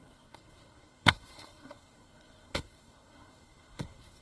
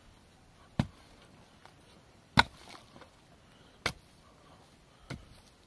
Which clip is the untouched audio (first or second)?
second